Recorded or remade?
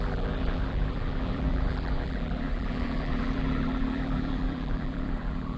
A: remade